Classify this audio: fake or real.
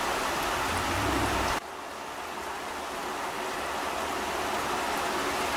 real